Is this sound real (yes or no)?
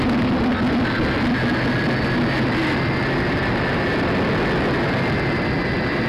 yes